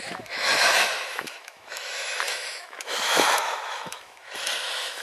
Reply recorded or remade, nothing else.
remade